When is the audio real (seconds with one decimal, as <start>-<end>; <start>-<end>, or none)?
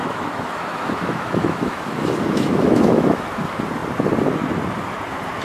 3.2-5.4